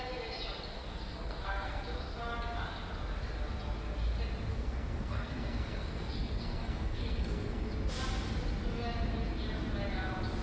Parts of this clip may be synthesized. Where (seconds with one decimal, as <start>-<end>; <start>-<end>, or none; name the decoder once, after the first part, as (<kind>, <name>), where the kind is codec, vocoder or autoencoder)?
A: 0.7-1.8 (codec, SNAC); 4.5-7.7